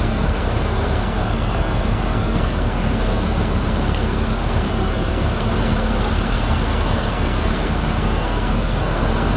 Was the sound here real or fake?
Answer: fake